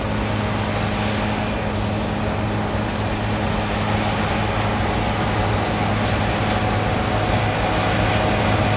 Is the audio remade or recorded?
recorded